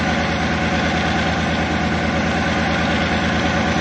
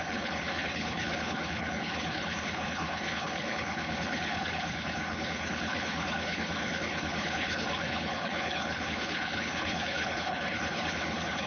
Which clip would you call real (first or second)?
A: first